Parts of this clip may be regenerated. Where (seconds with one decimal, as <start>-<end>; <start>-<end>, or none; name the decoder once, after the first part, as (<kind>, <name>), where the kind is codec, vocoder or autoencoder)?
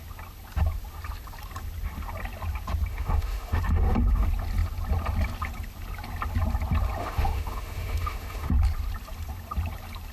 2.9-3.6 (autoencoder, DAC-VAE); 7.0-8.5